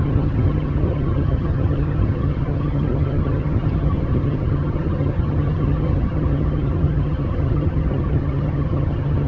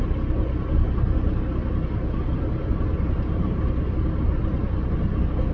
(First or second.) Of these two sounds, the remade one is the first